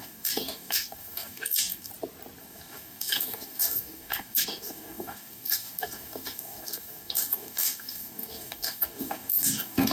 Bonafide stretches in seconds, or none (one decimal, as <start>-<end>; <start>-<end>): 1.9-2.4

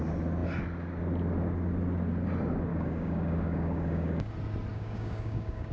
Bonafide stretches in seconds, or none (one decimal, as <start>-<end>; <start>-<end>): 0.0-2.7; 4.3-4.7

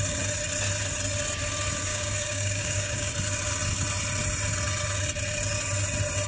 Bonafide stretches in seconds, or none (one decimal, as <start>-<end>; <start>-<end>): 0.0-1.9; 3.1-6.3

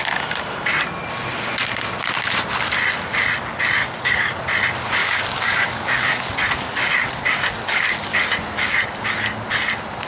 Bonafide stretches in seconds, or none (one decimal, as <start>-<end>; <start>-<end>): 0.0-3.8; 4.4-5.0; 6.4-10.1

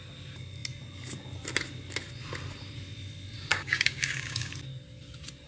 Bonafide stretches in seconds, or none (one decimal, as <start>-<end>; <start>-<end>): 0.0-3.5; 4.5-5.5